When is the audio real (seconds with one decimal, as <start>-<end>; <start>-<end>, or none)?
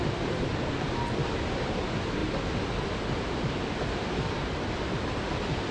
0.0-5.7